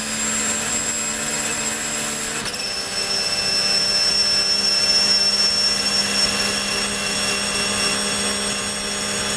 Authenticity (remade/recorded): recorded